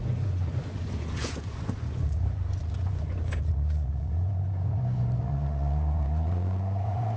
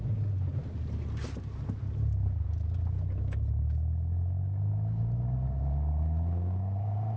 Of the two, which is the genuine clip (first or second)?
second